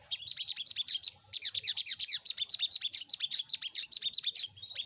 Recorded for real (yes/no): yes